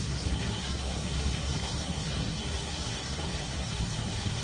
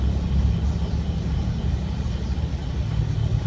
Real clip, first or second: second